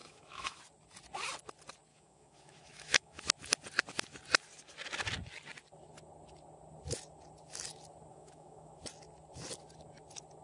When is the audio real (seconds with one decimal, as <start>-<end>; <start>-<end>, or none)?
0.6-1.9; 3.2-8.1; 8.8-10.4